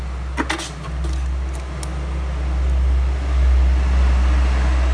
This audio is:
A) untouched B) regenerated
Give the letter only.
A